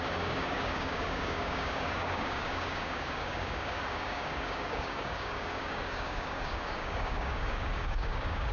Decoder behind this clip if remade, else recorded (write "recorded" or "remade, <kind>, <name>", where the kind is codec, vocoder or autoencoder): remade, codec, DAC